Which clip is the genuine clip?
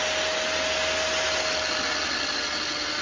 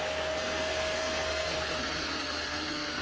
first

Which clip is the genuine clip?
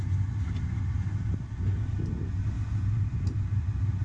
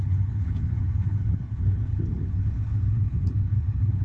first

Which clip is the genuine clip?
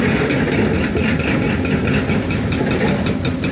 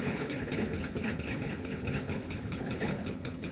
first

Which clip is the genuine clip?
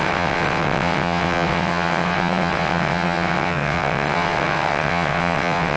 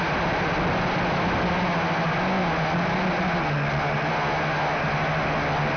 second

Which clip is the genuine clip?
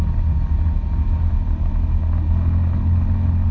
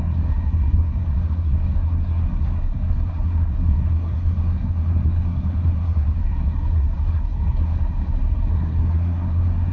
first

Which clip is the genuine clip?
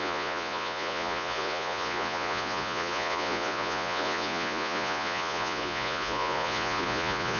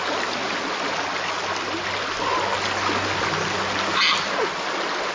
second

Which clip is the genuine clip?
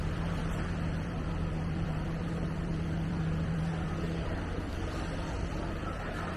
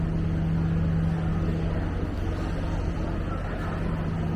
second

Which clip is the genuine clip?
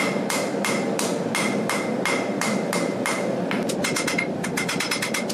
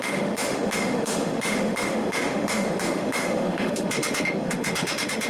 first